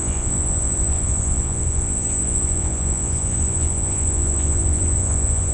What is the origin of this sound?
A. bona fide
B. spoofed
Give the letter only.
B